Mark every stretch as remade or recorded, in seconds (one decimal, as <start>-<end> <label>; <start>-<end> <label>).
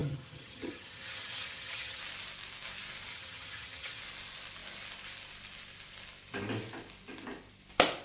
0.0-2.0 remade; 2.0-3.1 recorded; 3.1-4.0 remade; 4.0-8.0 recorded